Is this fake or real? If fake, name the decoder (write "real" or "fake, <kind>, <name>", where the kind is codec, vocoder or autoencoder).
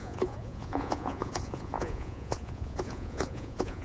fake, vocoder, Vocos